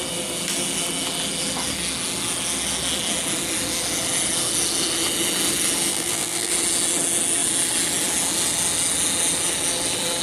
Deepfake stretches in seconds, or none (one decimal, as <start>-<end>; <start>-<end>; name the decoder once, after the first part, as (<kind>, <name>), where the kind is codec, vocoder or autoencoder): 5.9-6.5 (vocoder, BigVGAN v2)